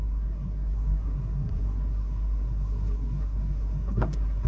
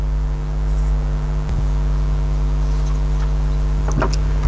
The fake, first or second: first